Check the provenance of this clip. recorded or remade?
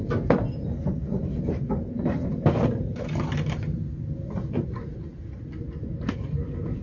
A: recorded